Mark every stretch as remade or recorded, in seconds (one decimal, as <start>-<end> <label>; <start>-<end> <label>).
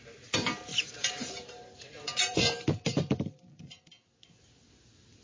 0.0-0.7 recorded; 0.7-3.8 remade; 3.8-5.2 recorded